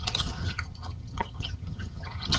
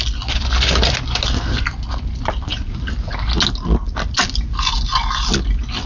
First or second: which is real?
second